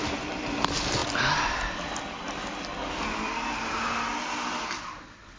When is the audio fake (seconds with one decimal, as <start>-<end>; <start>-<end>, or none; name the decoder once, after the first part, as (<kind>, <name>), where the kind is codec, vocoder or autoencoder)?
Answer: none